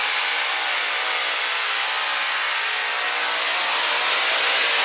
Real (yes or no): yes